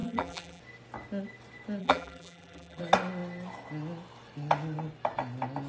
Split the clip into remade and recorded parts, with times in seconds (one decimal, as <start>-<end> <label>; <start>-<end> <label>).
0.0-0.6 remade; 0.6-1.8 recorded; 1.8-2.8 remade; 2.8-5.7 recorded